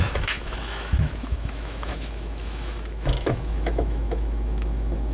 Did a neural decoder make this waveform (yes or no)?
yes